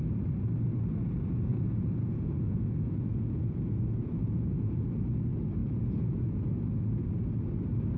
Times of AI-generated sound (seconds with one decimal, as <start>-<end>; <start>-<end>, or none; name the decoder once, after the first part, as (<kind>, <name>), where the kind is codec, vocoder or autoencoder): 1.5-4.8 (vocoder, Vocos); 5.6-6.4